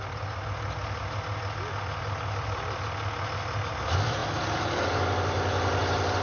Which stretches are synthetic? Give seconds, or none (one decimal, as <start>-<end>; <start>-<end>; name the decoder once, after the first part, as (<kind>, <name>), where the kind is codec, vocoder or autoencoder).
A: none